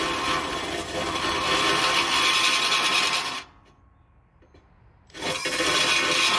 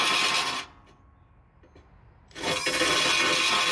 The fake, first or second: first